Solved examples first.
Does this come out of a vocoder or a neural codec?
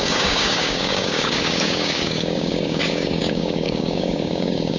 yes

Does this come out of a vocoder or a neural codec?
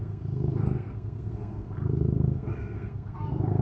yes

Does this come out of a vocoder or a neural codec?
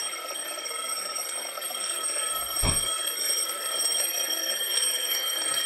yes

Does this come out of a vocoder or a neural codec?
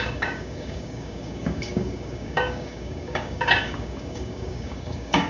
yes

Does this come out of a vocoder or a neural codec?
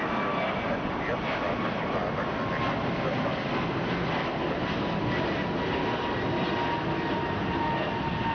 no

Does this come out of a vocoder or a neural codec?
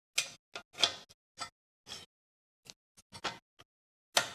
no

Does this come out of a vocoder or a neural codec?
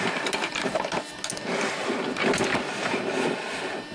no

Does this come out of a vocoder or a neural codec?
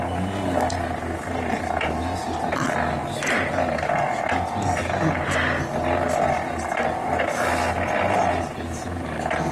no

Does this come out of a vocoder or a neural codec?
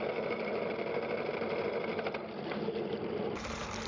no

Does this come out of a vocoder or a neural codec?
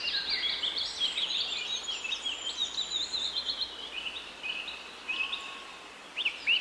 yes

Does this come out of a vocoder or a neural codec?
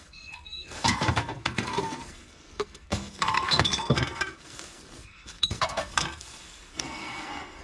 yes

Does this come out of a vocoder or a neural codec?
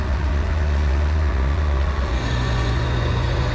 yes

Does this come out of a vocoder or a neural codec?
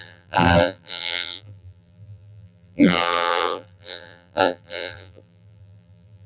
yes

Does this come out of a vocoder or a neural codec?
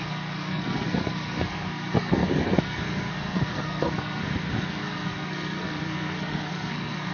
yes